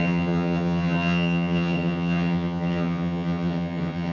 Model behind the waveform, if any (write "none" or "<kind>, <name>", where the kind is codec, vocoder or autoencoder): vocoder, HiFi-GAN